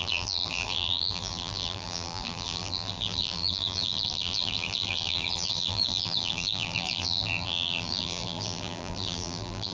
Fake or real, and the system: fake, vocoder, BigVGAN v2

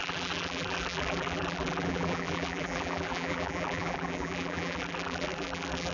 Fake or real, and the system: fake, vocoder, BigVGAN v2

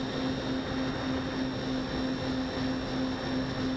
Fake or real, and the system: real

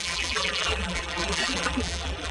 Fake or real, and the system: fake, vocoder, BigVGAN v2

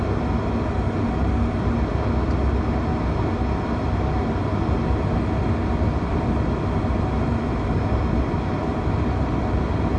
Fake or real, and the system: real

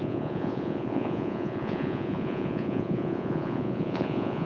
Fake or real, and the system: fake, vocoder, Vocos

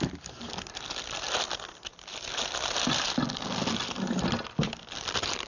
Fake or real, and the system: real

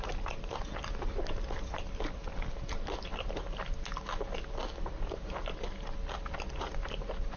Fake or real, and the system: real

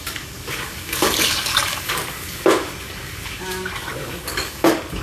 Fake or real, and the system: fake, codec, DAC